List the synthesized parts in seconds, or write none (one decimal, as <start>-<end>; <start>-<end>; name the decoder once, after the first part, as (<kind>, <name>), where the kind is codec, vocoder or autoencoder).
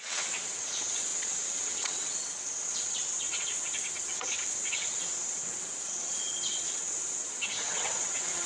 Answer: 0.0-8.5 (vocoder, WaveNeXt)